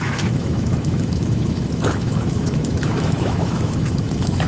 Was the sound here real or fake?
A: fake